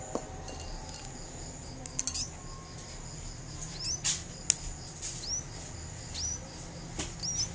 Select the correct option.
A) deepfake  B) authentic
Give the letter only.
B